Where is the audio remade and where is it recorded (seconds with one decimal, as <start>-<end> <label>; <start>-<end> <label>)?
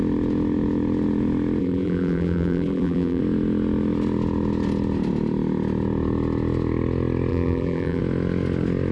0.0-1.6 recorded; 1.6-3.2 remade; 3.2-7.3 recorded; 7.3-8.0 remade; 8.0-8.9 recorded